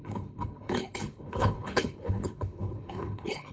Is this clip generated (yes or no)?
yes